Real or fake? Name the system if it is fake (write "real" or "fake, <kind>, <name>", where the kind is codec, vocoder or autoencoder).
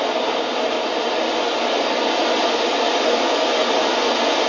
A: real